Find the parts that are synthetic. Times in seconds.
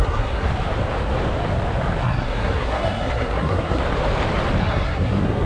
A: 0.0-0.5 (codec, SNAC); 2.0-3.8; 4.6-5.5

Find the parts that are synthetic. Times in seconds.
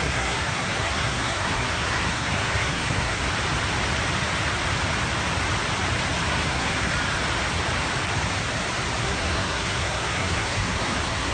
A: 0.0-3.2 (codec, SNAC); 6.3-6.9; 9.0-11.3